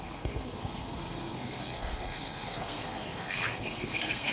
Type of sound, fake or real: fake